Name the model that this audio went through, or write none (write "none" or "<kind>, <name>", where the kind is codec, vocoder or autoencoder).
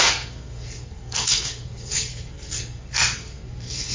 codec, SNAC